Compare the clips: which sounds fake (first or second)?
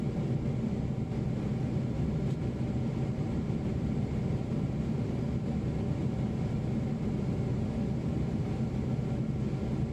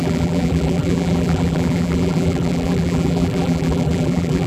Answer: second